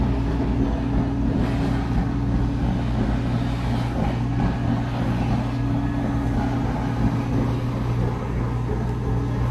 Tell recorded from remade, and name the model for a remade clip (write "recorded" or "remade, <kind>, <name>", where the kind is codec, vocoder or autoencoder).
recorded